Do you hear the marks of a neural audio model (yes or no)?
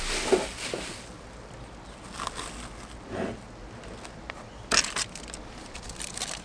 no